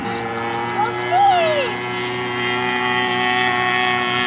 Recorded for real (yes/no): yes